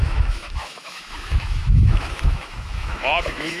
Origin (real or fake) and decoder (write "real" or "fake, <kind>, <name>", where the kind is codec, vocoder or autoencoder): fake, autoencoder, DAC-VAE